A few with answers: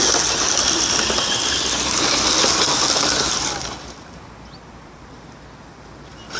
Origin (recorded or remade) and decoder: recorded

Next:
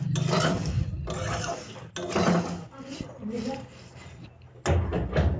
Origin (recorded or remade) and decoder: recorded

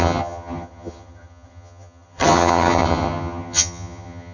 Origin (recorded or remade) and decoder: remade, vocoder, HiFi-GAN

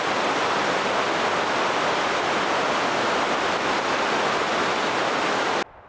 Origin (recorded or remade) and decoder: recorded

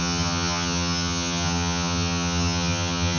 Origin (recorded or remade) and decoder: remade, vocoder, HiFi-GAN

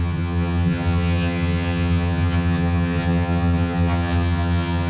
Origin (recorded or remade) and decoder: remade, vocoder, HiFi-GAN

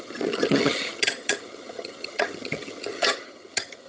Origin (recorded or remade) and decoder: remade, vocoder, HiFi-GAN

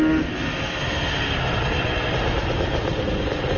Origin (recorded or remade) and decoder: recorded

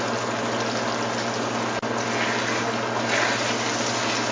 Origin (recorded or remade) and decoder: recorded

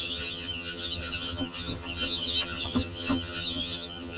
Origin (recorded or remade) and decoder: remade, vocoder, HiFi-GAN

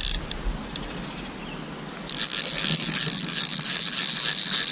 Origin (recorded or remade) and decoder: recorded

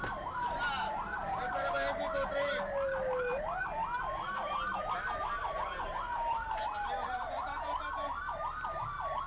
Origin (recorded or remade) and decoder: recorded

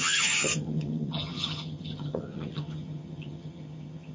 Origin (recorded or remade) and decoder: remade, vocoder, HiFi-GAN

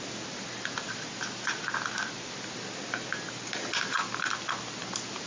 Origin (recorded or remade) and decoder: recorded